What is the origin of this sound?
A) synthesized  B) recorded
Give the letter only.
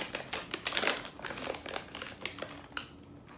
B